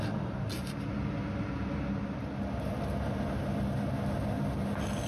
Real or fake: real